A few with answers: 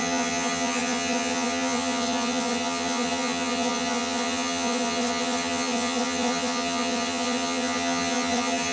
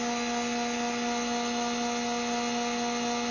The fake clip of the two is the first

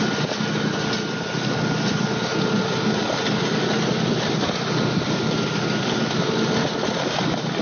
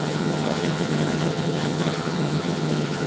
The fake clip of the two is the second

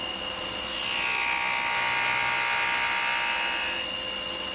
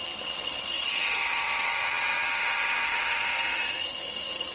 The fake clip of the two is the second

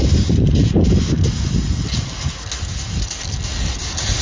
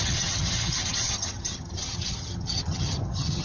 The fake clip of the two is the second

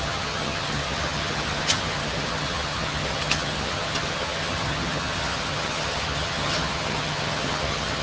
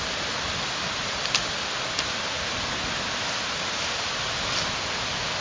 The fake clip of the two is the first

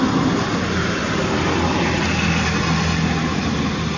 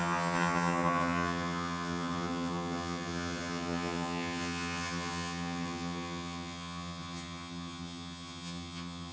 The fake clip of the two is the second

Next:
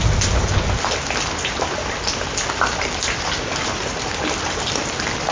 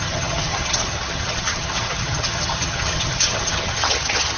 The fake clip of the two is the second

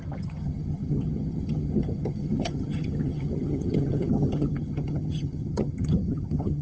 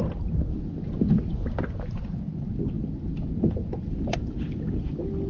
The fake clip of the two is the first